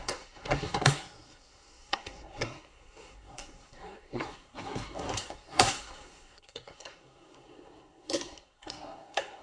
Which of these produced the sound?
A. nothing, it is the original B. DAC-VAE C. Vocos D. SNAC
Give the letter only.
D